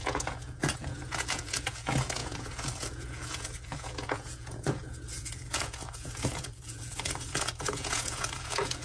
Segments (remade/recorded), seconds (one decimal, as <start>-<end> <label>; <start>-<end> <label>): 0.0-8.8 remade